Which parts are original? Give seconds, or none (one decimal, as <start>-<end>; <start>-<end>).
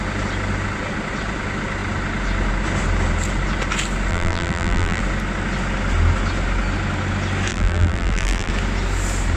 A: 0.0-4.1; 5.0-7.5; 8.5-9.4